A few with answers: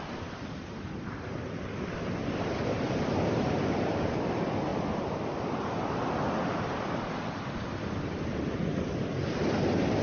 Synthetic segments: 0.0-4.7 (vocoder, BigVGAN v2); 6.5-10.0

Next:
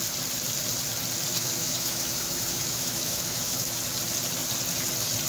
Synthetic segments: 1.3-3.8 (autoencoder, DAC-VAE)

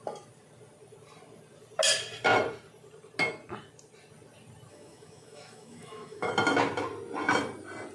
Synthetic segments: 4.7-6.3 (autoencoder, DAC-VAE)

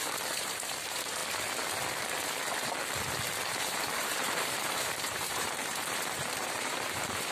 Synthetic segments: 0.0-1.2 (vocoder, BigVGAN v2); 3.5-7.3

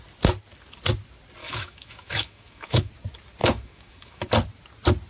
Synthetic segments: 1.4-2.9 (autoencoder, DAC-VAE); 3.4-4.2